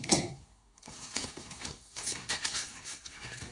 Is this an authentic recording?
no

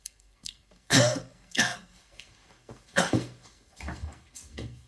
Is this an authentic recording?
no